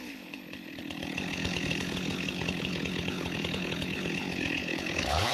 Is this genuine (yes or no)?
no